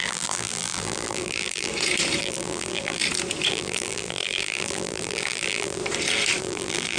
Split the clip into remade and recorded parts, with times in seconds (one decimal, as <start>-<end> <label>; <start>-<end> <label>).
0.0-1.7 remade; 1.7-2.2 recorded; 2.2-3.0 remade; 3.0-3.5 recorded; 3.5-5.8 remade; 5.8-6.4 recorded; 6.4-7.0 remade